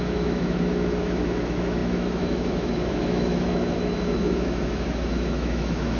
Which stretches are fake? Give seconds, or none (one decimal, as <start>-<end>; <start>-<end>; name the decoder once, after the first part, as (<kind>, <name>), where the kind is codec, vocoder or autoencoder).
0.0-6.0 (autoencoder, DAC-VAE)